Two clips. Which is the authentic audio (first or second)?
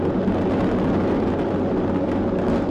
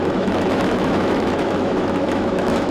first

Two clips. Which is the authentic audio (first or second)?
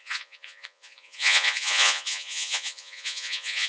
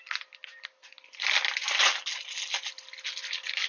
second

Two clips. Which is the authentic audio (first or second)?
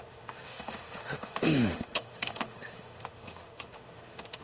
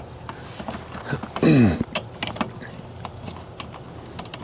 second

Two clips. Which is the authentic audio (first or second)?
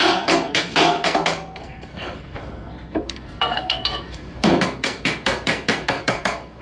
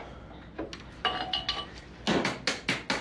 second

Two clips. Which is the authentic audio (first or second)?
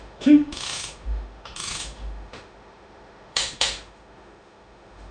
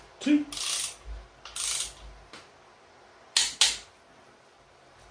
second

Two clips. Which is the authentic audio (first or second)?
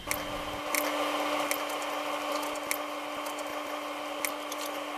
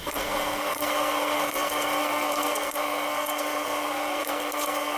first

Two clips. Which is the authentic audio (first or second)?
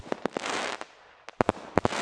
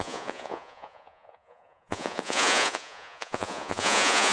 first